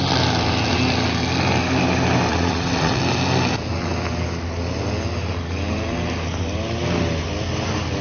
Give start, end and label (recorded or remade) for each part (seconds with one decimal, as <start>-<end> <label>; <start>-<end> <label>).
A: 0.0-2.3 recorded; 2.3-3.0 remade; 3.0-8.0 recorded

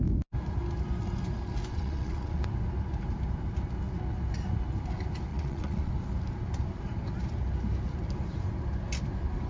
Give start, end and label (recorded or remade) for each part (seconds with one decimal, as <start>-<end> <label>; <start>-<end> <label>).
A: 0.0-1.7 recorded; 1.7-2.4 remade; 2.4-5.3 recorded; 5.3-5.9 remade; 5.9-9.5 recorded

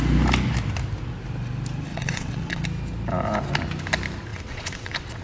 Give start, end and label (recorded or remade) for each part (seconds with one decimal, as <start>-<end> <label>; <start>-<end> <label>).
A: 0.0-1.9 recorded; 1.9-2.6 remade; 2.6-4.3 recorded; 4.3-5.2 remade

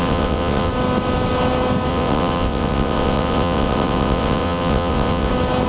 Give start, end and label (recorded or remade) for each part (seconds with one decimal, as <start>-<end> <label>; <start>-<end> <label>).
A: 0.0-0.7 remade; 0.7-1.9 recorded; 1.9-5.3 remade; 5.3-5.7 recorded

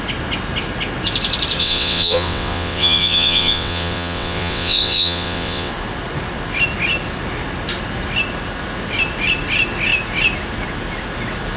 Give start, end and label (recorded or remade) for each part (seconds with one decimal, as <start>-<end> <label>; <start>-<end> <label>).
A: 0.0-1.6 recorded; 1.6-5.7 remade; 5.7-11.6 recorded

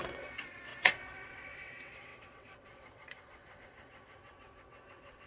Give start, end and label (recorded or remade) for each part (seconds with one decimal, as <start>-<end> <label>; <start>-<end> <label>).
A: 0.0-5.3 remade